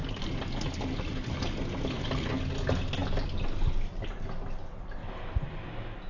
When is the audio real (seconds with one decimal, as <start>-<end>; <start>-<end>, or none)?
0.0-6.1